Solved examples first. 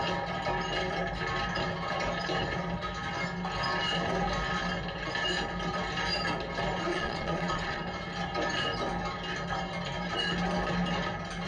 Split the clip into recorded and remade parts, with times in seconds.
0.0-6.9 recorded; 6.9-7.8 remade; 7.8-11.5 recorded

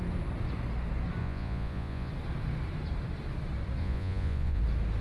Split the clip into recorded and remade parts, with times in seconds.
0.0-1.2 recorded; 1.2-2.1 remade; 2.1-3.8 recorded; 3.8-4.6 remade; 4.6-5.0 recorded

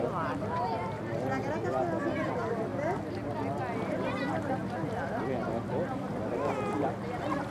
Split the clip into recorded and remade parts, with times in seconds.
0.0-7.5 recorded

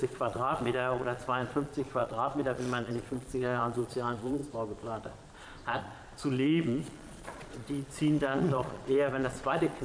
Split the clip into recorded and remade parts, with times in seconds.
0.0-4.4 remade; 4.4-5.8 recorded; 5.8-9.8 remade

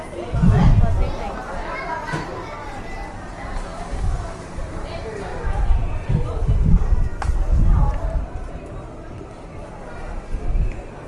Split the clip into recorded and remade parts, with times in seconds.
0.0-5.3 recorded; 5.3-6.1 remade; 6.1-11.1 recorded

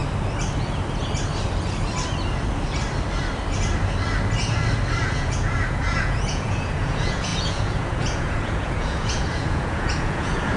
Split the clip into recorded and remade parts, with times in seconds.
0.0-5.0 recorded; 5.0-10.6 remade

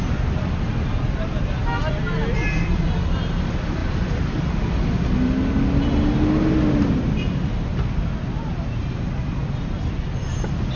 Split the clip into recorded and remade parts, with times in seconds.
0.0-10.8 recorded